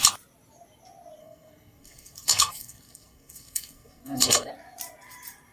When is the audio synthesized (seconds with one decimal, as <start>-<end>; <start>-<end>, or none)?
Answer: 1.2-4.5